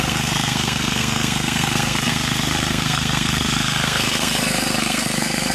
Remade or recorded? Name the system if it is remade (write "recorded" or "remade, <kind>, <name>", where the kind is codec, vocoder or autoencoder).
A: remade, codec, SNAC